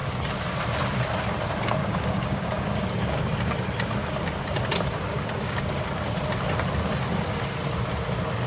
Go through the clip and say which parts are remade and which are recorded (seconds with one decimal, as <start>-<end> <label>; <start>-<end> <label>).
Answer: 0.0-1.8 recorded; 1.8-3.2 remade; 3.2-5.1 recorded; 5.1-5.8 remade; 5.8-8.5 recorded